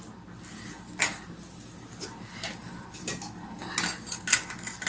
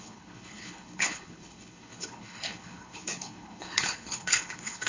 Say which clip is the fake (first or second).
second